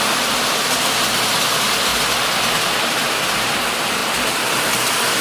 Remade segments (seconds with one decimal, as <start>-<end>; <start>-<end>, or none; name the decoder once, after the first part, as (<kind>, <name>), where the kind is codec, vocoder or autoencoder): 0.0-1.9 (vocoder, BigVGAN v2); 2.5-4.0